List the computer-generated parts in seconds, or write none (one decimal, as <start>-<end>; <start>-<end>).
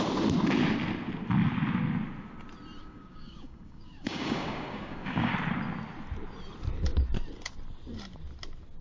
2.8-5.3